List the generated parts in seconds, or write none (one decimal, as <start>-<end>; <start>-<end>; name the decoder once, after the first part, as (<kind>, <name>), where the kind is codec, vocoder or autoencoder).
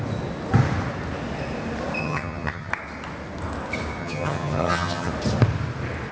2.0-2.7 (vocoder, HiFi-GAN); 4.0-5.1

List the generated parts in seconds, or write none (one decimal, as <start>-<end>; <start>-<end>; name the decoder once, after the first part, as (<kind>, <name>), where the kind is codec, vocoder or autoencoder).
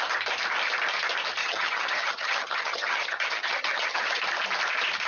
1.4-4.2 (vocoder, HiFi-GAN)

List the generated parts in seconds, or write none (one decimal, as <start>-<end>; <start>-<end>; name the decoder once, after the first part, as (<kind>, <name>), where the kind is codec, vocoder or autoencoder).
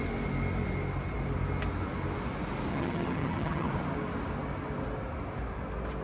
2.7-3.7 (vocoder, HiFi-GAN)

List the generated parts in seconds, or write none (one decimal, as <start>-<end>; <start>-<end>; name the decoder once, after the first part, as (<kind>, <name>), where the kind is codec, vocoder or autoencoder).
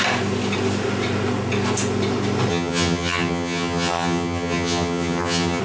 2.5-5.6 (vocoder, HiFi-GAN)